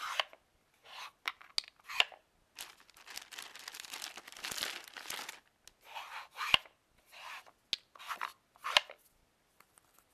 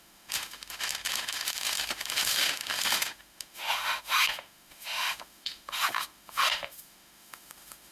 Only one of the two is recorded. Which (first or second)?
first